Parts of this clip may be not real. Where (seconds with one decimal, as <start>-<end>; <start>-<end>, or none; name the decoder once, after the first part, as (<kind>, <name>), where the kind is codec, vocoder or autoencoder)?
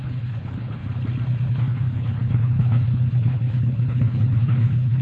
0.0-0.8 (codec, HILCodec); 1.5-5.0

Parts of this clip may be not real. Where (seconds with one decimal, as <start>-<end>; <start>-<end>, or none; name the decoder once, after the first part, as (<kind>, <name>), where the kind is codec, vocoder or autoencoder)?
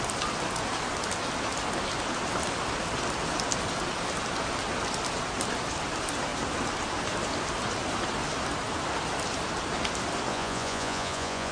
10.3-11.5 (vocoder, Vocos)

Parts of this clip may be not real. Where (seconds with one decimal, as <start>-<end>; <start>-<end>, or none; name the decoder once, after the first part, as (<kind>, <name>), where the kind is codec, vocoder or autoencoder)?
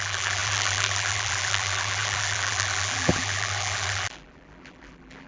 0.0-5.3 (vocoder, BigVGAN v2)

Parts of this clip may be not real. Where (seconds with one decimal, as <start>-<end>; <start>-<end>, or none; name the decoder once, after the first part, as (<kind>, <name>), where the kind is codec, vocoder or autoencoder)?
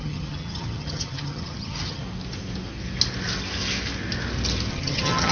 0.0-2.0 (vocoder, HiFi-GAN); 4.7-5.3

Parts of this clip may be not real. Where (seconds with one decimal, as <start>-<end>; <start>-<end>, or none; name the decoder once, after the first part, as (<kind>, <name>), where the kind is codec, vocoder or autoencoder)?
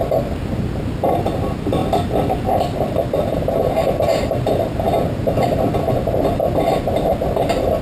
none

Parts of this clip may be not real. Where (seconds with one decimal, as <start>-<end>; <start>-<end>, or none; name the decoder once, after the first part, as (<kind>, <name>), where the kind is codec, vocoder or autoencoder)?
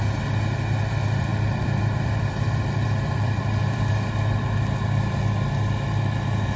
1.3-4.4 (vocoder, BigVGAN v2)